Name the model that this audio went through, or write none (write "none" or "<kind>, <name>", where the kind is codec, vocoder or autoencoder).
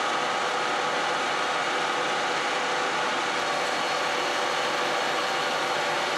none